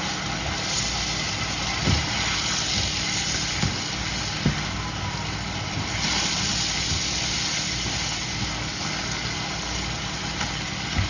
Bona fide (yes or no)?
yes